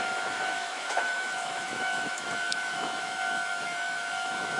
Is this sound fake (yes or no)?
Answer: yes